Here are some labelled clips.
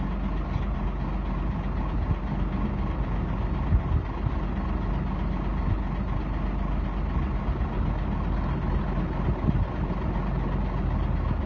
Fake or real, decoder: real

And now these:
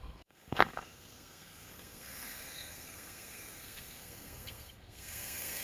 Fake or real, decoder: fake, codec, SNAC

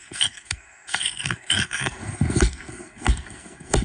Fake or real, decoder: fake, codec, SNAC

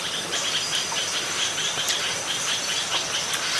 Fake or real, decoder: real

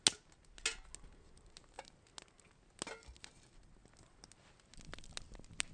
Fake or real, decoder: real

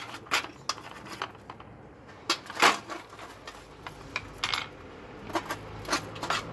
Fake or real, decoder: real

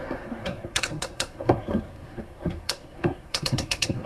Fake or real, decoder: fake, codec, SNAC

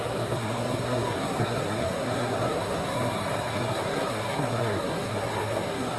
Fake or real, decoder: fake, codec, SNAC